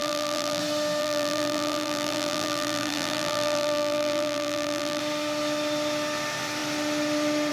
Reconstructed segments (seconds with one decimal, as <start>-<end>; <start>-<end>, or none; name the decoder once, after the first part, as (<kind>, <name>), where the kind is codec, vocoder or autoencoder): 0.0-0.6 (vocoder, BigVGAN v2); 1.0-5.0